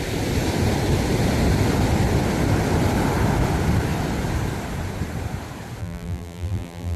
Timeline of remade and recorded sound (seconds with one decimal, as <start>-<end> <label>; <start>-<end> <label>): 0.0-5.8 recorded; 5.8-7.0 remade